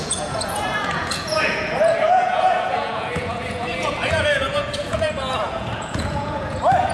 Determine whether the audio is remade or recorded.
remade